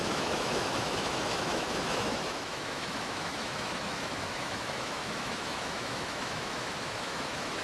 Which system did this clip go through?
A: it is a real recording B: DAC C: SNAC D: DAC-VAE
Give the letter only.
D